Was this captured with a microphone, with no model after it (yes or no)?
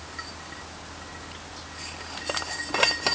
yes